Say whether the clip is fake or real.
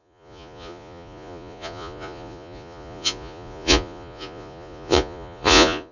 fake